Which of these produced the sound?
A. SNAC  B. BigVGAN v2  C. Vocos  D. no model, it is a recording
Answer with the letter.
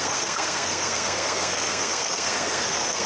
A